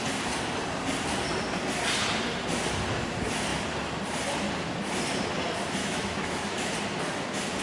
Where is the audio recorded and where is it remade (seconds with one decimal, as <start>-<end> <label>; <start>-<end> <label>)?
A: 0.0-5.8 recorded; 5.8-6.7 remade; 6.7-7.6 recorded